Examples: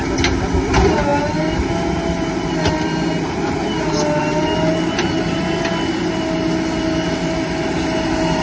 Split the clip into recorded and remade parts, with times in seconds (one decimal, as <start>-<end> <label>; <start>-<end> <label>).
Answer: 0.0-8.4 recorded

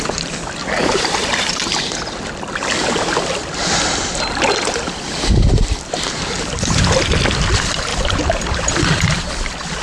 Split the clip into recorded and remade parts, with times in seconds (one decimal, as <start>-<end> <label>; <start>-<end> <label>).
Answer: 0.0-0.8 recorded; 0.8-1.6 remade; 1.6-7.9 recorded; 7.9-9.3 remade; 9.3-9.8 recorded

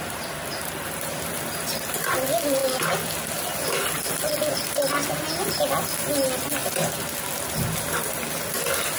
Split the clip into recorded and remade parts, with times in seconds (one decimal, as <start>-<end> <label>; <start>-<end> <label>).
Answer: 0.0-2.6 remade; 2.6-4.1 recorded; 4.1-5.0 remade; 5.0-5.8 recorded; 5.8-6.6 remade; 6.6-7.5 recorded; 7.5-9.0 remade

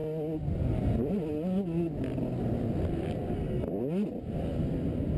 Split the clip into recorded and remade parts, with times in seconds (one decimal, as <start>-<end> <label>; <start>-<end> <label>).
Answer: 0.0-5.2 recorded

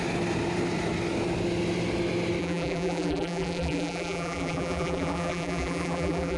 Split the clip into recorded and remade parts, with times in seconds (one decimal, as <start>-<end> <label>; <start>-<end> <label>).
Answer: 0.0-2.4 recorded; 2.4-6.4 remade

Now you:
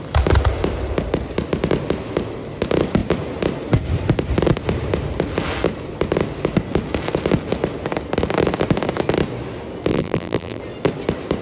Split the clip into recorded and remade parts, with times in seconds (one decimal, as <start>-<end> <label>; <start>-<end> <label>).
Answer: 0.0-9.9 recorded; 9.9-10.6 remade; 10.6-11.4 recorded

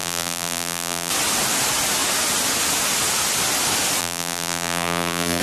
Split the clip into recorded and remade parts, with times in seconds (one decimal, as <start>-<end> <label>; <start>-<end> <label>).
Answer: 0.0-1.1 remade; 1.1-4.0 recorded; 4.0-5.4 remade

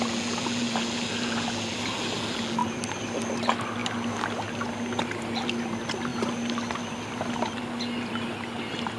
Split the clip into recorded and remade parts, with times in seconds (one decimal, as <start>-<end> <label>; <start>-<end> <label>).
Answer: 0.0-2.6 recorded; 2.6-3.2 remade; 3.2-9.0 recorded